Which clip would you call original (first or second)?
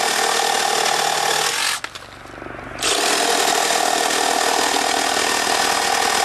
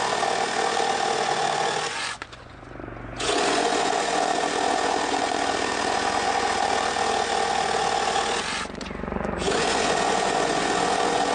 first